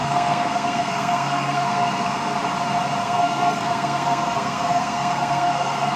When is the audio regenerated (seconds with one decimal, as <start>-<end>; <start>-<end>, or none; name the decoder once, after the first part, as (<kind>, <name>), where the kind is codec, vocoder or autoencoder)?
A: 0.0-2.4 (codec, SNAC); 3.0-6.0